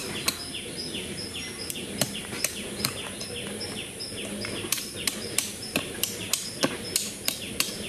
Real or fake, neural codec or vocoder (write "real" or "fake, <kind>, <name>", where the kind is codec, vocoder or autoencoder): fake, vocoder, BigVGAN v2